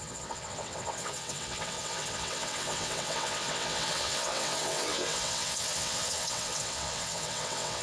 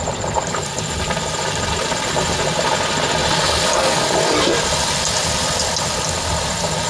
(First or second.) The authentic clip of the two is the second